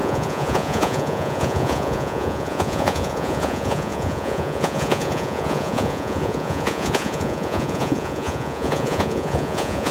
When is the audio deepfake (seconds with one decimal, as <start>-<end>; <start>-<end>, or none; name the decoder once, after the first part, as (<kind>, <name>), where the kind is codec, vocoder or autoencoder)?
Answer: 0.0-9.9 (vocoder, Vocos)